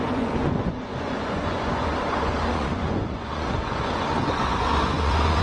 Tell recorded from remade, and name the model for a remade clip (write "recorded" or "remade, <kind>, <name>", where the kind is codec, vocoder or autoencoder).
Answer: remade, vocoder, Vocos